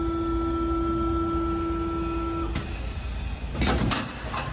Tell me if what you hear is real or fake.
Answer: real